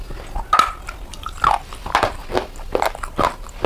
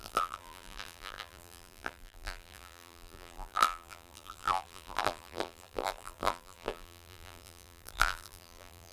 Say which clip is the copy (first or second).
second